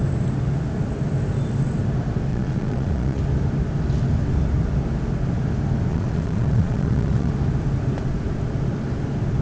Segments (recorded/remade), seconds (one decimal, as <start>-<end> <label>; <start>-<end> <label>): 0.0-2.3 recorded; 2.3-3.2 remade; 3.2-5.9 recorded; 5.9-7.3 remade; 7.3-9.4 recorded